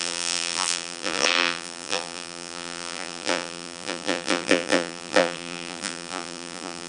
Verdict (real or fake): fake